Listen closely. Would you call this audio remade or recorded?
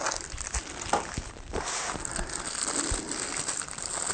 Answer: recorded